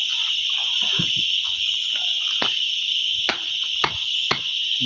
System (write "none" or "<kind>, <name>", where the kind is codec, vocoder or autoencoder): none